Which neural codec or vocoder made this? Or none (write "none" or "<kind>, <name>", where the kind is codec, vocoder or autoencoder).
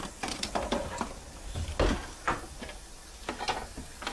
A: none